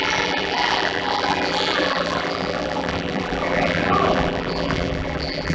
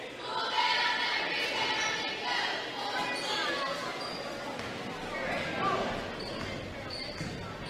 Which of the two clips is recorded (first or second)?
second